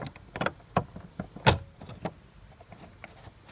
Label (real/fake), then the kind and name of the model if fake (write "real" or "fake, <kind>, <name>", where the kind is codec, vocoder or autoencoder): real